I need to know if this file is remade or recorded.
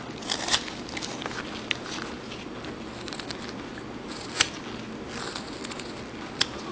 recorded